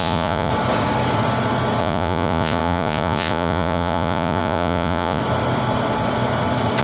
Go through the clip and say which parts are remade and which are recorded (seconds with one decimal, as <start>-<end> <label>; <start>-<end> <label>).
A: 0.0-0.5 remade; 0.5-1.8 recorded; 1.8-5.2 remade; 5.2-6.8 recorded